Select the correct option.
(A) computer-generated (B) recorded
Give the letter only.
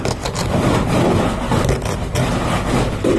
B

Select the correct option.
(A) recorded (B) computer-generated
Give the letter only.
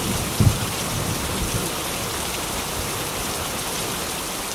B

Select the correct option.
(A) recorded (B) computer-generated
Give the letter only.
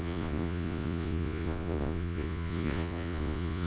B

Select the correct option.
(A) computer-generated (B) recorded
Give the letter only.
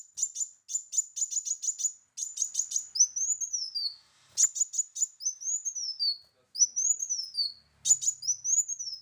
B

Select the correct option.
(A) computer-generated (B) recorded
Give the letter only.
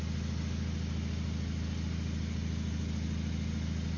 B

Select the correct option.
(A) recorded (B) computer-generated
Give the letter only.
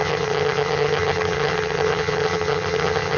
B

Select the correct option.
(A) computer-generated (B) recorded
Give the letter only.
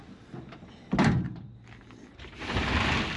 B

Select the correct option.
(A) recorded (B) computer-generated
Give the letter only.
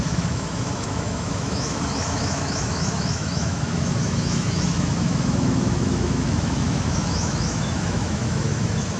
B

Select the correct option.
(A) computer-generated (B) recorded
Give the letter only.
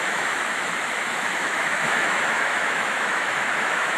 A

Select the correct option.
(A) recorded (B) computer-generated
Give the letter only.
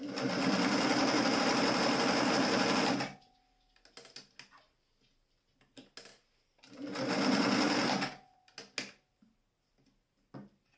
A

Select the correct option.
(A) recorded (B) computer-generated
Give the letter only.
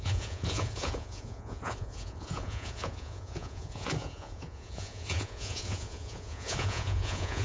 B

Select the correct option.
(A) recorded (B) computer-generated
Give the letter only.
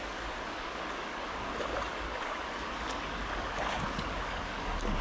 B